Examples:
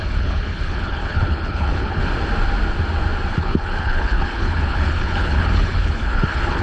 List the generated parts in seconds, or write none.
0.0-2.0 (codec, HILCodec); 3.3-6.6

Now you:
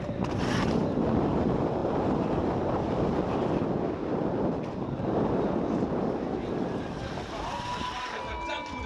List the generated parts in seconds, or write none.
none

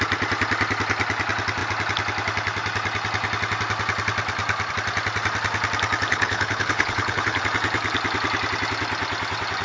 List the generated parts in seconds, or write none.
6.1-7.4 (codec, HILCodec)

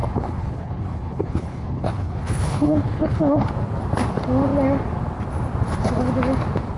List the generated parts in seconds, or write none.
0.0-3.5 (codec, HILCodec)

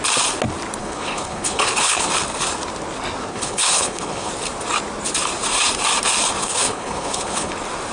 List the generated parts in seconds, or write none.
0.8-2.1 (codec, HILCodec); 3.3-4.3; 6.4-7.5

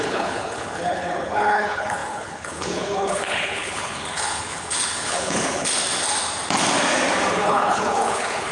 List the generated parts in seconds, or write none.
0.0-5.7 (codec, HILCodec); 7.3-8.5

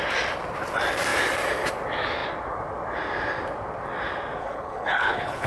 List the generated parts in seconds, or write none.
4.4-5.5 (codec, HILCodec)

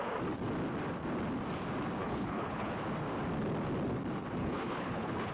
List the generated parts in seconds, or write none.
2.0-2.7 (codec, HILCodec); 4.4-5.3